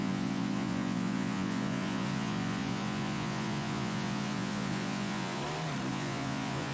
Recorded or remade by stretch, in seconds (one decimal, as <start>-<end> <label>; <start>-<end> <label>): 0.0-5.4 remade; 5.4-5.9 recorded; 5.9-6.7 remade